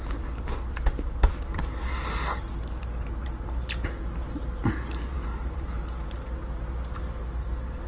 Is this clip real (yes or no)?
no